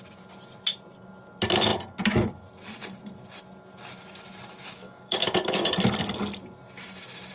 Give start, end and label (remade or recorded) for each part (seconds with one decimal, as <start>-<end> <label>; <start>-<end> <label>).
0.0-4.6 recorded; 4.6-5.7 remade; 5.7-7.3 recorded